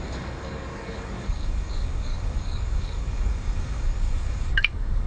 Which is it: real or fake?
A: fake